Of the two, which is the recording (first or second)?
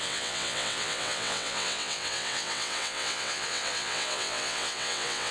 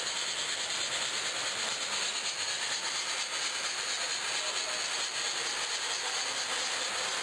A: second